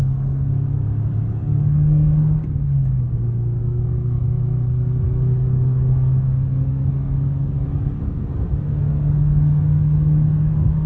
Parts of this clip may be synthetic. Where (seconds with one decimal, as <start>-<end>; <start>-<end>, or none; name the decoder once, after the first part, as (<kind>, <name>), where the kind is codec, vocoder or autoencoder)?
0.0-10.9 (codec, SNAC)